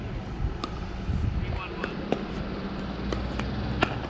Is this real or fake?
real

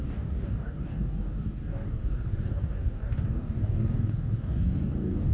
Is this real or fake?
fake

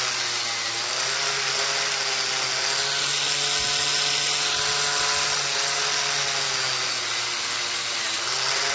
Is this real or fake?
real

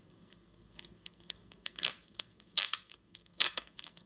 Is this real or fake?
fake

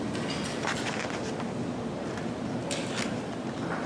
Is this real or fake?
real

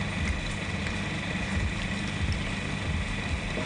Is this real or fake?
real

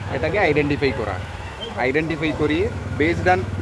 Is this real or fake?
fake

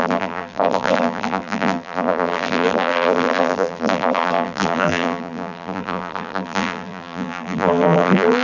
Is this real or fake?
fake